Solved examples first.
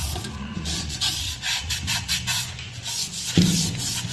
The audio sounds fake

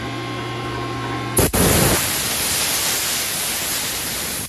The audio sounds real